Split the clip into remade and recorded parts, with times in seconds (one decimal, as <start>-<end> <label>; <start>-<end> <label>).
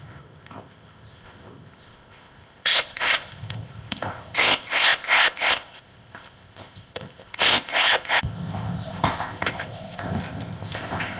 0.0-11.2 remade